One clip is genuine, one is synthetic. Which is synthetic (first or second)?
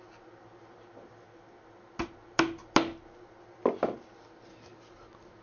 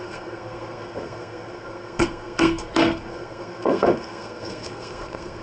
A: second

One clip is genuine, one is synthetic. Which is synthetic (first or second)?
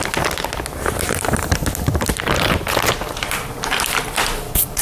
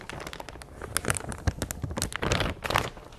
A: first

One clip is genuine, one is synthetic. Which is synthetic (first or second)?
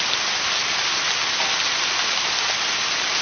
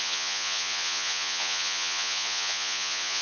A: second